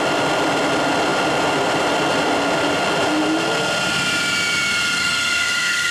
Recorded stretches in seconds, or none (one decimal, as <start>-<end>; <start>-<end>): 0.0-5.0